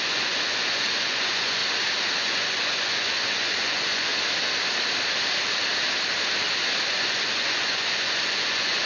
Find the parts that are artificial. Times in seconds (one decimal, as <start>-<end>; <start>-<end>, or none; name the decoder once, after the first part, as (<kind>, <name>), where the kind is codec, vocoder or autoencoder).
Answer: 0.0-1.6 (vocoder, Vocos); 2.2-4.1; 6.9-8.9

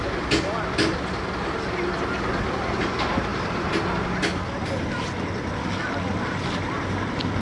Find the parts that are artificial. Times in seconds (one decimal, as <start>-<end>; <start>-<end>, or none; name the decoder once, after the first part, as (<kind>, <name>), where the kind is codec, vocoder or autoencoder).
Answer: none

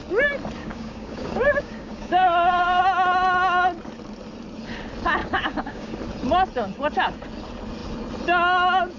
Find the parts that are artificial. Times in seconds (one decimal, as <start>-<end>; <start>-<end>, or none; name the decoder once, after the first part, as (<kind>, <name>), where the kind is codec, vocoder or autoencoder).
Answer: 0.6-2.8 (codec, DAC); 5.2-5.9

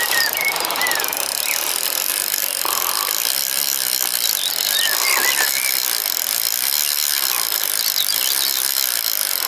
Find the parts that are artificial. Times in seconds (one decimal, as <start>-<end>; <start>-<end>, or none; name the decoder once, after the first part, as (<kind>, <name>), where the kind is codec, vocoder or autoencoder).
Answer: 2.1-4.5 (vocoder, BigVGAN v2)

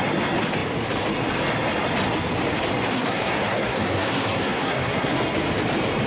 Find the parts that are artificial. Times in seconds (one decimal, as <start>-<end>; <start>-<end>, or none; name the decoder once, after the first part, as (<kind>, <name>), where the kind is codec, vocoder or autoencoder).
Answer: 2.9-5.2 (codec, SNAC)

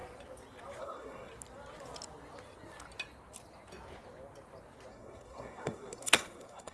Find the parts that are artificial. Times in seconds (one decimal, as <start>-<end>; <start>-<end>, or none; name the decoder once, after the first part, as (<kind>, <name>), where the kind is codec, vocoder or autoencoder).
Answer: 0.8-1.3 (codec, SNAC); 4.9-6.7